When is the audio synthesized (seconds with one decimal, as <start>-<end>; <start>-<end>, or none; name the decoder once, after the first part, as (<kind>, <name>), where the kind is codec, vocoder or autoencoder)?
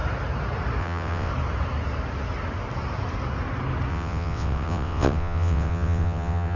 0.8-1.3 (vocoder, WaveNeXt); 3.9-6.6